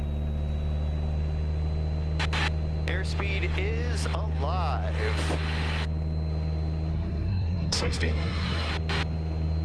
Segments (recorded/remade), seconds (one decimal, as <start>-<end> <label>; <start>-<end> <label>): 0.0-6.9 recorded; 6.9-8.7 remade; 8.7-9.6 recorded